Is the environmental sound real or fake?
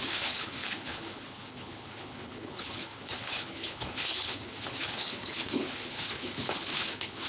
fake